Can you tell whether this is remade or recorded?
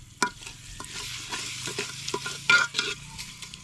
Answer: recorded